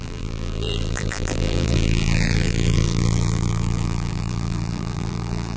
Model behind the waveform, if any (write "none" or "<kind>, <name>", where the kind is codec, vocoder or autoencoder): vocoder, BigVGAN v2